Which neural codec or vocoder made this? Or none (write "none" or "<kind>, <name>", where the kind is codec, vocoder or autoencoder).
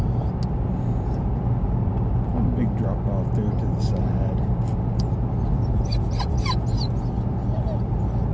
none